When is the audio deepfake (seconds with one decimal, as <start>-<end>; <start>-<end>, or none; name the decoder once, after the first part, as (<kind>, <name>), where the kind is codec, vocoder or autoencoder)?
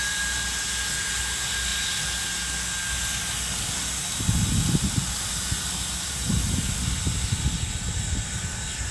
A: none